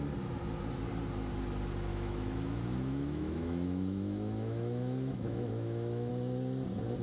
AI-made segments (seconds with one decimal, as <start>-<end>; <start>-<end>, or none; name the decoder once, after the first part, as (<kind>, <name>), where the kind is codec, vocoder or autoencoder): 1.9-6.1 (autoencoder, DAC-VAE)